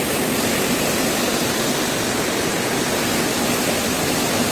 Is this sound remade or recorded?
recorded